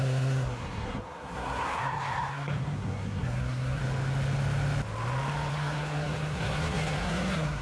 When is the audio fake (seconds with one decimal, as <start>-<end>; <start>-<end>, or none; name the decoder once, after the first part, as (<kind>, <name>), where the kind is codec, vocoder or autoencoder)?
0.0-3.8 (codec, SNAC); 5.5-7.6